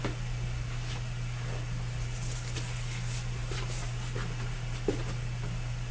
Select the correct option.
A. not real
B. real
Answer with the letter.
B